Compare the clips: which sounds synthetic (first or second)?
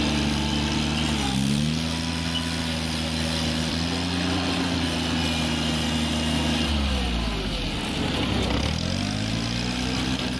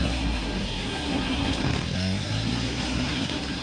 second